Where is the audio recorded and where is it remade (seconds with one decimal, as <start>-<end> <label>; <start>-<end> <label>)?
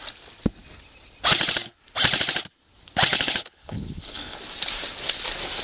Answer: 0.0-3.1 recorded; 3.1-4.4 remade; 4.4-5.6 recorded